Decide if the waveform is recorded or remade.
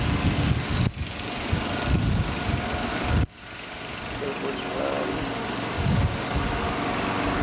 recorded